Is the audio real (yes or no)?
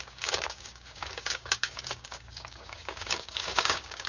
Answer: no